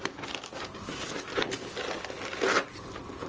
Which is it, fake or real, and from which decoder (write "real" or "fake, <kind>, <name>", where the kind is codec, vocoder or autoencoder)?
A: real